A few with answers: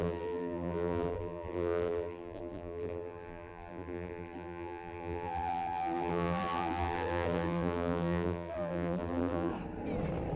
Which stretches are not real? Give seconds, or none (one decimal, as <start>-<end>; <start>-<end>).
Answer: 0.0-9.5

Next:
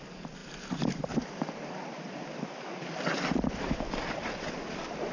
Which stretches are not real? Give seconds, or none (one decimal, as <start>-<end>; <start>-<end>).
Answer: 0.0-5.1

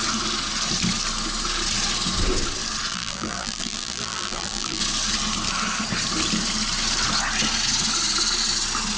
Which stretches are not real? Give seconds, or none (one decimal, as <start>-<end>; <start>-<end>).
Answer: 2.9-4.8

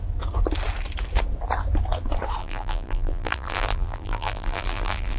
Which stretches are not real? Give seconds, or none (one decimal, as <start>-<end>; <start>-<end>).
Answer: 2.4-5.2

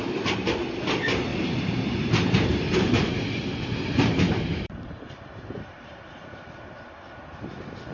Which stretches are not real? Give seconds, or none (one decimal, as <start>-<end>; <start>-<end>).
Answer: 1.3-6.0

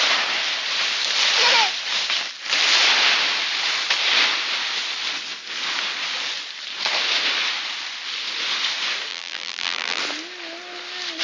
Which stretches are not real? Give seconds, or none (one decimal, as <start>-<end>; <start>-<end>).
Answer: 9.1-10.0